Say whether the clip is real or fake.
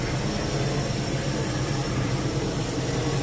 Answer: fake